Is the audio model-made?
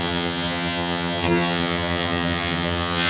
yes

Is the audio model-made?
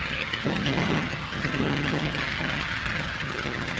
yes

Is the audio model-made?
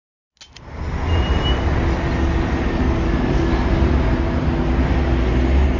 no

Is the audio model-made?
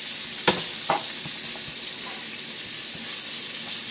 no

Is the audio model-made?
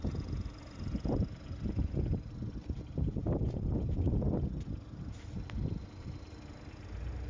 no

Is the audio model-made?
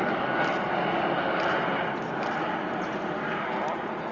no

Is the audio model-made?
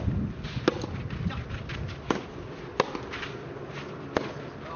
no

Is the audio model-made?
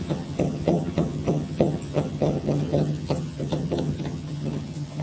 yes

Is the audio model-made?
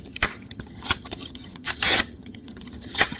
yes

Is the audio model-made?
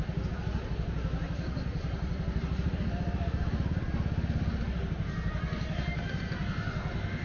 no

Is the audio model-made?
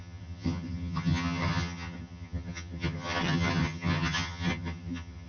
yes